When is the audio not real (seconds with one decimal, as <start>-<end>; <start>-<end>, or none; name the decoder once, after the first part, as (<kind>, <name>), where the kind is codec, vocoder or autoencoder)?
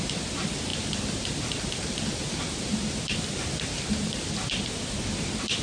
none